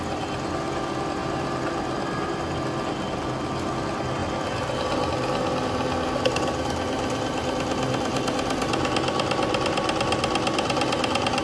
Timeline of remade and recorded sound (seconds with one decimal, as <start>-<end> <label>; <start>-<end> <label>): 0.0-11.4 recorded